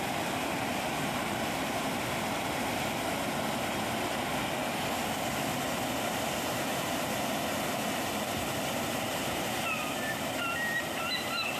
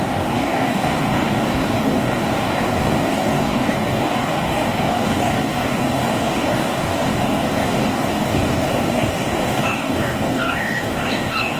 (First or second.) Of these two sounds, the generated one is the second